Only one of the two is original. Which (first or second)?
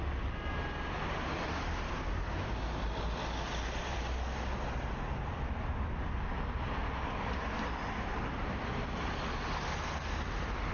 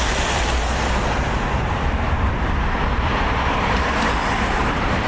first